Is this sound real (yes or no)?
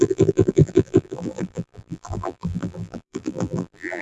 no